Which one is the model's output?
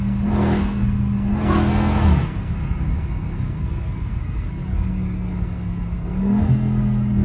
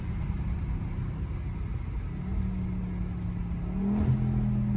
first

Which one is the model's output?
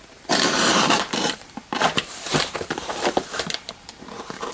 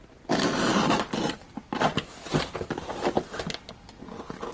first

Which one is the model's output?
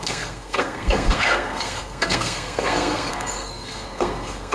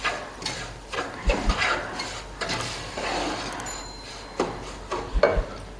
first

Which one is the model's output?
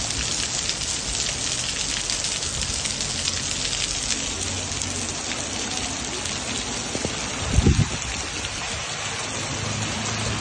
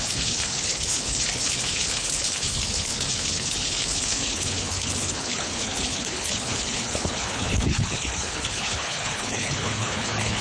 second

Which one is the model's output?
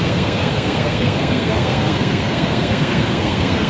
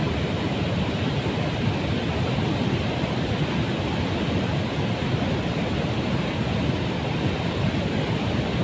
first